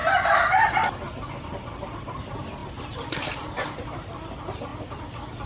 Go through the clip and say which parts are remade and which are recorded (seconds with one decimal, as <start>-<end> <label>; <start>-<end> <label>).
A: 0.0-2.0 recorded; 2.0-4.7 remade; 4.7-5.5 recorded